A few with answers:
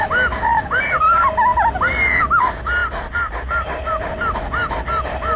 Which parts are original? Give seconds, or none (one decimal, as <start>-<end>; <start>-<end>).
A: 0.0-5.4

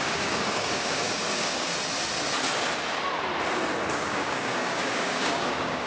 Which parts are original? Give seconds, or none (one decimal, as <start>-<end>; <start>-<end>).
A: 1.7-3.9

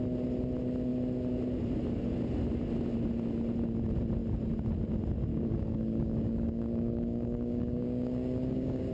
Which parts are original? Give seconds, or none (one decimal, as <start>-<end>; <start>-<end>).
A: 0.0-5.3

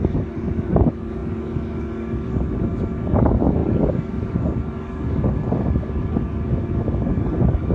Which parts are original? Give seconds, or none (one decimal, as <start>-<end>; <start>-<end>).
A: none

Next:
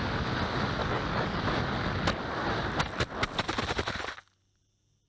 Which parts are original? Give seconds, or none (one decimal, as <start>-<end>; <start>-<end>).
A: 0.0-0.8; 1.4-5.1